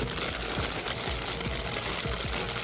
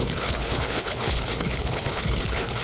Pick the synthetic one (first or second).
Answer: second